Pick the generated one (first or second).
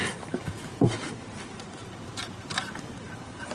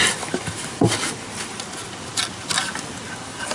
first